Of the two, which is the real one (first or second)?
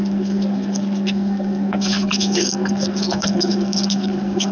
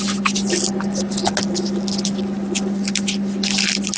second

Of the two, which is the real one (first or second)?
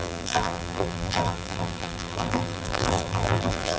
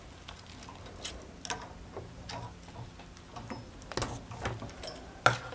second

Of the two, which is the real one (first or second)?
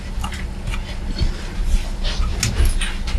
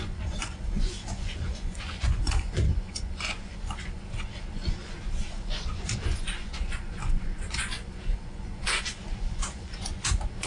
first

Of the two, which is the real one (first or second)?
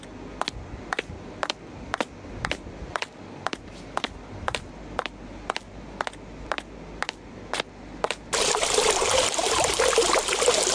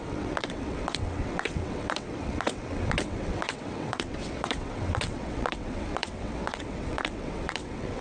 first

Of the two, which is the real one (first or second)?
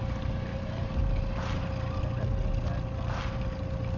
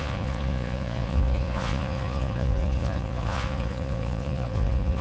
first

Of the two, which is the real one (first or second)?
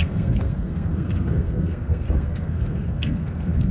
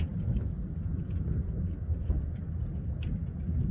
second